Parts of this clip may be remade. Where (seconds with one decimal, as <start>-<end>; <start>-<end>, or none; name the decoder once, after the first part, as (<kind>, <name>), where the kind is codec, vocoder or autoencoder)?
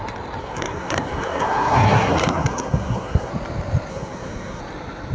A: 0.4-3.3 (codec, SNAC); 3.9-4.6